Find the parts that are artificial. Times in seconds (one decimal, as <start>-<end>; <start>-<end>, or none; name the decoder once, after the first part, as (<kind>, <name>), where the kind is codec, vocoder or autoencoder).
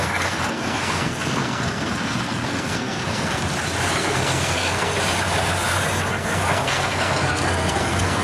0.0-3.4 (codec, SNAC); 3.9-4.9; 6.1-8.2